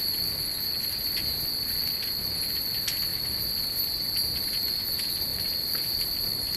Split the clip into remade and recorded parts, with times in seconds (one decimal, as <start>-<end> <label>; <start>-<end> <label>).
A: 0.0-5.3 recorded; 5.3-6.6 remade